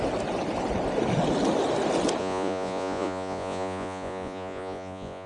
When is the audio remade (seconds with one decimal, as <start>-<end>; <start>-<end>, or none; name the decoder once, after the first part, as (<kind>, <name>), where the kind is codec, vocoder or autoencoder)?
2.2-5.3 (vocoder, Vocos)